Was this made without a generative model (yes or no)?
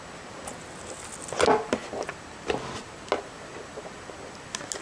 yes